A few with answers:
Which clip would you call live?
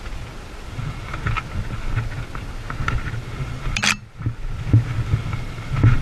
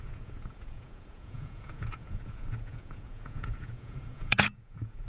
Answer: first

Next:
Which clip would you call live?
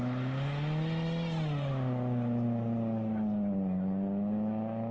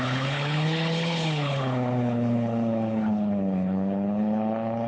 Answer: first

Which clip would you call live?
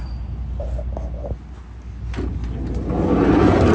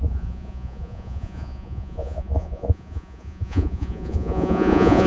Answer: first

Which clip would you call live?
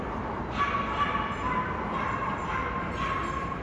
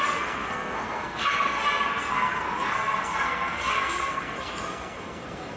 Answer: first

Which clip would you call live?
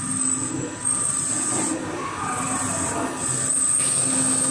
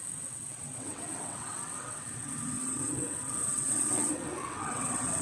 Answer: first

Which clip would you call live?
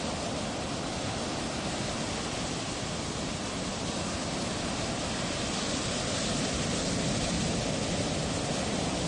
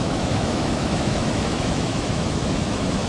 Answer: first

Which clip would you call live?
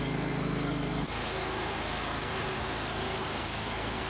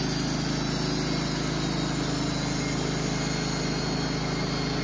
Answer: second